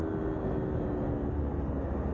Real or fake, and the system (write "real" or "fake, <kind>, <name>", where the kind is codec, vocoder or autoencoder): real